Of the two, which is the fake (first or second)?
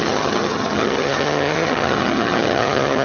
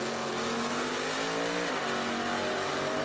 first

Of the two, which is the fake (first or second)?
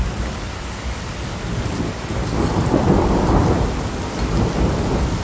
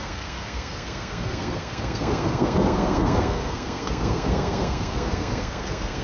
second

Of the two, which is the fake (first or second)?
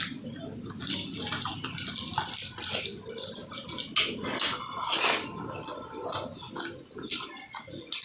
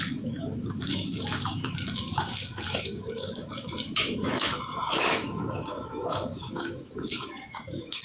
second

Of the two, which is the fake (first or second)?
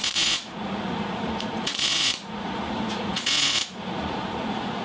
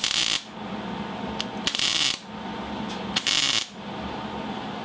first